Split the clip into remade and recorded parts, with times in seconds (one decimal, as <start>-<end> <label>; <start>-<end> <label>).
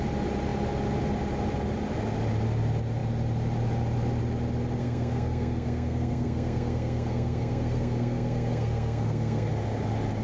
0.0-4.8 recorded; 4.8-9.5 remade; 9.5-10.2 recorded